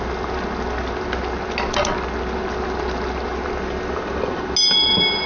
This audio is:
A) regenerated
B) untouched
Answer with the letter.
B